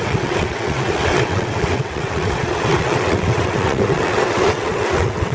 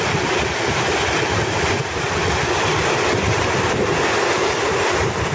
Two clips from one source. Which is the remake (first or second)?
first